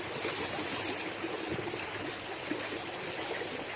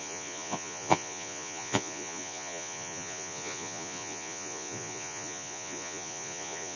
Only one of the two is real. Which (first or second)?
first